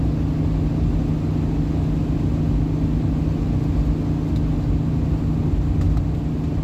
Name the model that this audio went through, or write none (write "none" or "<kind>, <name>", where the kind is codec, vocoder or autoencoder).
none